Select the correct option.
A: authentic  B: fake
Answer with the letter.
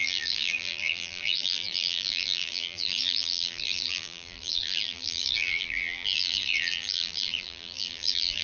B